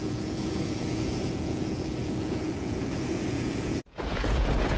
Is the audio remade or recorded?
remade